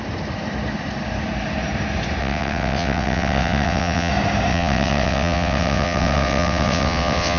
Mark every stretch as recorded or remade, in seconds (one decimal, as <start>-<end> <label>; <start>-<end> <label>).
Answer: 0.0-2.2 recorded; 2.2-4.1 remade; 4.1-4.5 recorded; 4.5-7.4 remade